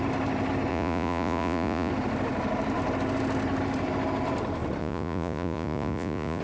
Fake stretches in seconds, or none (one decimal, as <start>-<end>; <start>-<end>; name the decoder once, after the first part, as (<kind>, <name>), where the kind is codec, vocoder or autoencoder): 0.7-1.9 (vocoder, Vocos); 4.8-6.4